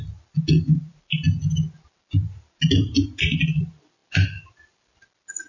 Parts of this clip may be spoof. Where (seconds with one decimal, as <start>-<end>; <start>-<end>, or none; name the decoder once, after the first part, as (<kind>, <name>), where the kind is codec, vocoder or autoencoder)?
none